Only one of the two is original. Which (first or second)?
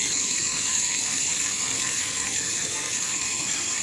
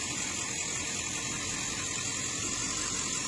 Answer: second